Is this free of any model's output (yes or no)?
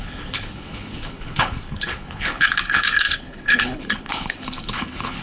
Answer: no